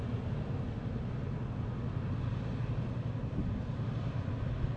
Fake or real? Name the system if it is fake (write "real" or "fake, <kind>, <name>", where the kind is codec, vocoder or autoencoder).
real